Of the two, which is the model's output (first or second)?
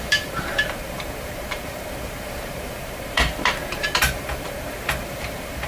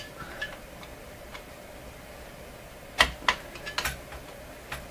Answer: first